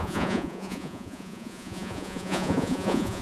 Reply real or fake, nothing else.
fake